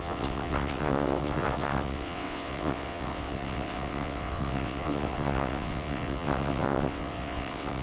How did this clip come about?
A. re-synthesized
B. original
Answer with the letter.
A